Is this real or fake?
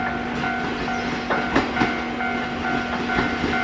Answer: real